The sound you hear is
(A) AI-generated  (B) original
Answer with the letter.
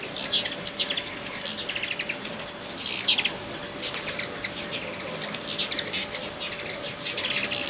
B